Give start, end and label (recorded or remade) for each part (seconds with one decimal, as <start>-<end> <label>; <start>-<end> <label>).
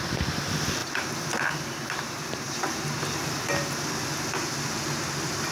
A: 0.0-0.8 recorded; 0.8-3.8 remade; 3.8-5.5 recorded